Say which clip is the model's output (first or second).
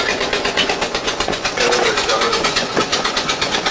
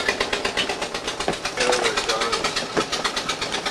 first